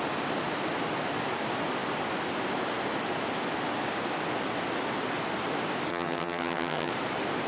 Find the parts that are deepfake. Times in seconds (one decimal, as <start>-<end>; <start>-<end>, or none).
5.9-6.9